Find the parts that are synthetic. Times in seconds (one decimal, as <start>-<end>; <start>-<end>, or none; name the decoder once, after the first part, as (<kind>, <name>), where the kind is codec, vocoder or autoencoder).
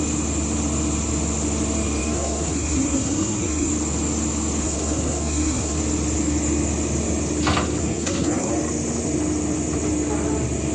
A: 2.0-3.7 (codec, SNAC); 4.6-5.8; 7.8-8.5